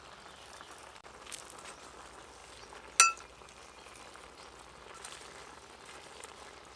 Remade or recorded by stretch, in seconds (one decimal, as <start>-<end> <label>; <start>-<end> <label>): 0.0-6.8 recorded